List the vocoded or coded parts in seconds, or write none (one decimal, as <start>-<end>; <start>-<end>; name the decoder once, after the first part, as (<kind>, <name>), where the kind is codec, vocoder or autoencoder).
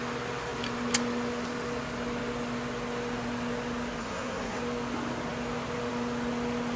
4.0-4.6 (codec, SNAC)